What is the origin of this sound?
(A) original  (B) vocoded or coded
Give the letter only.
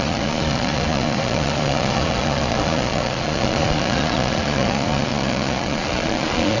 B